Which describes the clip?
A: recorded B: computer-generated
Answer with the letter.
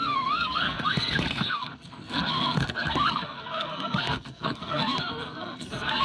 B